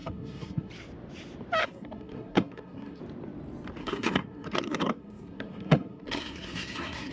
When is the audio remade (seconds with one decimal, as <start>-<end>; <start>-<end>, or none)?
0.0-0.7; 1.6-3.0; 3.8-7.1